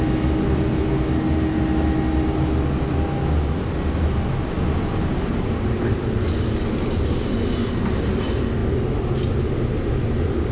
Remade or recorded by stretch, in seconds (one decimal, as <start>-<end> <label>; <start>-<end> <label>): 0.0-10.5 recorded